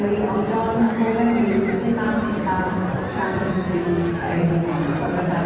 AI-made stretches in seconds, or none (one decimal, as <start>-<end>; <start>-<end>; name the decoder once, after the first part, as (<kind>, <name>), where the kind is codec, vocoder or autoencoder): 3.1-4.5 (codec, SNAC)